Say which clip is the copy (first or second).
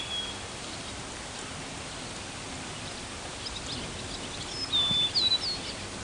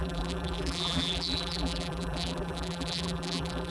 second